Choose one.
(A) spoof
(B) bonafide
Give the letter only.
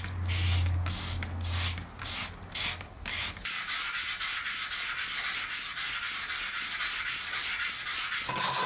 B